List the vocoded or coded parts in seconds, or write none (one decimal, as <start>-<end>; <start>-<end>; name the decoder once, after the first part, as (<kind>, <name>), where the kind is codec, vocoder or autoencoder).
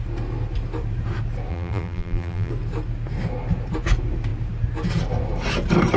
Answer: 1.5-2.5 (vocoder, BigVGAN v2)